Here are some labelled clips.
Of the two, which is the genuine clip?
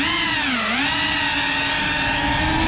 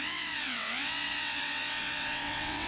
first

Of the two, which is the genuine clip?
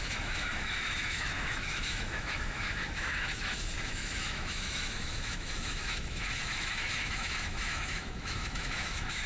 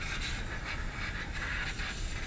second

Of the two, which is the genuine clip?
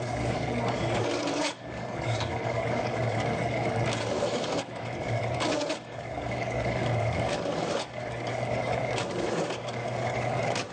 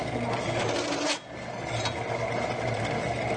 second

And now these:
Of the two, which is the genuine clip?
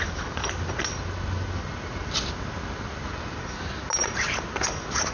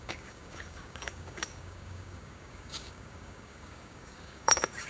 first